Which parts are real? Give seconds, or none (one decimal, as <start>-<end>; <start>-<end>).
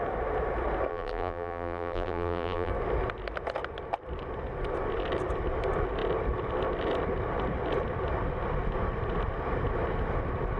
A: 0.0-0.9; 2.7-10.6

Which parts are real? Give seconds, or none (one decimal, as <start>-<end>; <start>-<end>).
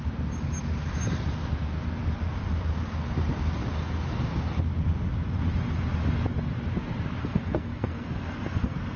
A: 0.0-7.2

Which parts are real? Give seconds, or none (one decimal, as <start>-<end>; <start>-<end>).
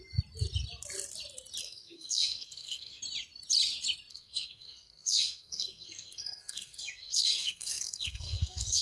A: 0.0-1.6; 3.0-4.1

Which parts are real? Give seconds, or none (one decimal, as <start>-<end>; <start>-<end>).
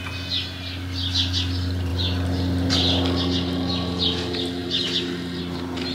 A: 0.0-5.9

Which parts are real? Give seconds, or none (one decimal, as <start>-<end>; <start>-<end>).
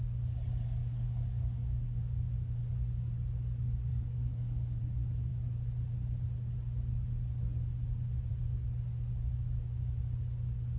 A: 0.0-0.8; 2.5-3.9; 4.8-10.8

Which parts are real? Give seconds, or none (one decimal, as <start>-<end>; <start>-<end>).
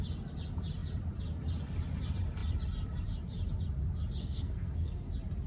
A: 0.0-4.2; 5.1-5.5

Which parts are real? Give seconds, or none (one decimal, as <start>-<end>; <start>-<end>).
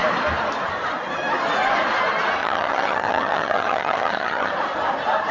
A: 0.0-2.4; 4.5-5.3